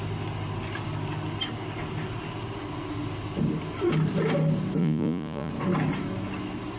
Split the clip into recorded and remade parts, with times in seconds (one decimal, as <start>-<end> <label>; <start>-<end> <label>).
0.0-4.8 recorded; 4.8-5.5 remade; 5.5-6.8 recorded